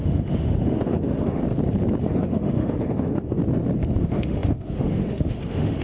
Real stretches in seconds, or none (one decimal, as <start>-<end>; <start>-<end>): 1.4-2.0; 3.4-4.0

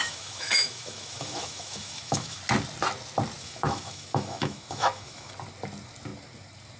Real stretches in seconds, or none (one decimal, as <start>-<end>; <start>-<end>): 2.4-3.4; 5.3-6.8

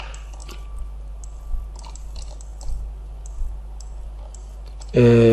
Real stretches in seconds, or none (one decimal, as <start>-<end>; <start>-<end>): 0.0-5.3

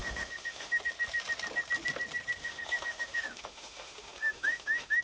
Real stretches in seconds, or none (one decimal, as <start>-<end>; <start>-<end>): 0.8-2.4

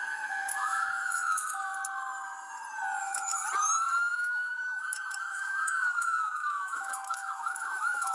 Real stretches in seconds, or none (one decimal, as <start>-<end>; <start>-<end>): 1.7-3.0; 3.4-4.1